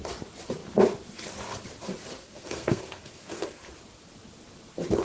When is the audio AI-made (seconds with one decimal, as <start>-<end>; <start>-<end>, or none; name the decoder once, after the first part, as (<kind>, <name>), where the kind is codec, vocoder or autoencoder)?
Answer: 2.2-3.7 (codec, SNAC)